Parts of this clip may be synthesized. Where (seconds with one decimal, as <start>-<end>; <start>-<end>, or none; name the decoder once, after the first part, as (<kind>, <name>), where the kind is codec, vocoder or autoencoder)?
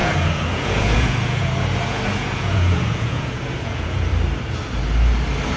0.0-4.1 (vocoder, Vocos)